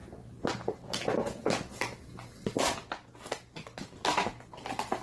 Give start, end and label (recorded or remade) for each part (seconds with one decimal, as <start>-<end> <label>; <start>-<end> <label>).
0.0-5.0 recorded